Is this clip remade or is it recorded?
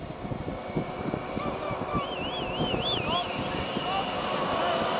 recorded